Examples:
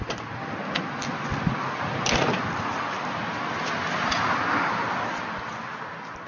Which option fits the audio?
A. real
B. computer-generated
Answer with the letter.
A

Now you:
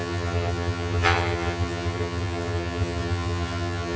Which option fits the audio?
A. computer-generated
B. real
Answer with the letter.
A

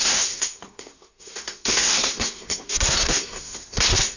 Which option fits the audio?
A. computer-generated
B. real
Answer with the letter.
A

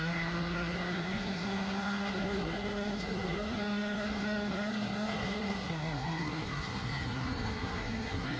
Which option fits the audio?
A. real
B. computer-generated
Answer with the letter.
B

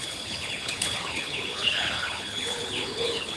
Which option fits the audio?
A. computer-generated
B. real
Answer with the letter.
A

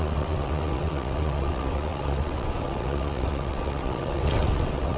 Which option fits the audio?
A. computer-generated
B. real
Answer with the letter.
A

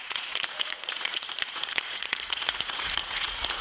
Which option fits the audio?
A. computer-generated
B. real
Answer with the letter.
A